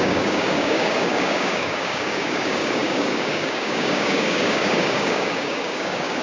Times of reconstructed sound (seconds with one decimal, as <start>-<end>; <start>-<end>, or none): 0.0-6.2